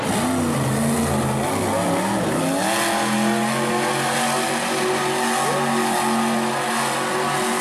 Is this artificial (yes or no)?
no